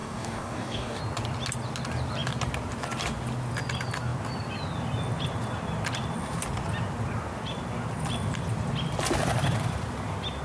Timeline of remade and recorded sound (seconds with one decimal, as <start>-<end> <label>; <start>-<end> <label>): 0.0-1.0 remade; 1.0-10.4 recorded